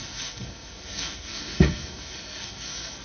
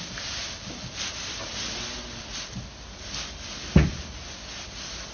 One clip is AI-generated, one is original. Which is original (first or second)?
second